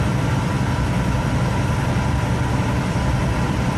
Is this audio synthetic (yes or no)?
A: yes